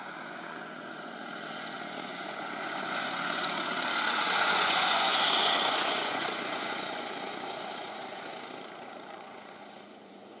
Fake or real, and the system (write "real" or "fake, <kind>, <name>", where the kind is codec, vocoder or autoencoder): fake, vocoder, Vocos